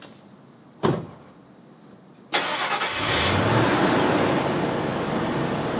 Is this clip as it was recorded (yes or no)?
yes